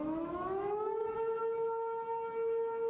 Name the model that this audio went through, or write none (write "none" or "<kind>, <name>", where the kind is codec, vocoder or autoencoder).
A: autoencoder, DAC-VAE